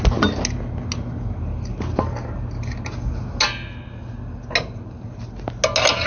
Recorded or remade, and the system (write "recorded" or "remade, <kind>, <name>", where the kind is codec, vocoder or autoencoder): recorded